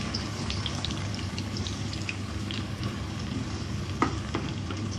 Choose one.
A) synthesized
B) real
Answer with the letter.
A